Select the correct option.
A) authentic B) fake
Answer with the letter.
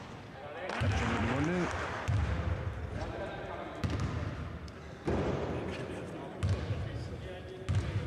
A